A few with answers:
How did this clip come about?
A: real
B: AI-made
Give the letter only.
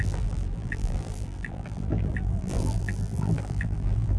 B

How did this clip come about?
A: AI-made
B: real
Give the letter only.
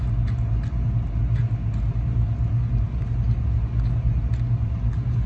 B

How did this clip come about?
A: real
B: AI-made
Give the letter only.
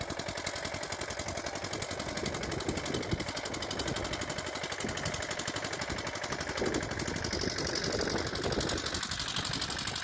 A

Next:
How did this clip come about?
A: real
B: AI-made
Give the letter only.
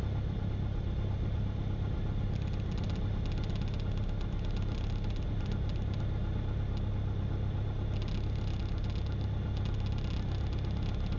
A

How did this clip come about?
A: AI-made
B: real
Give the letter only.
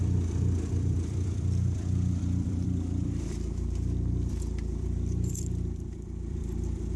A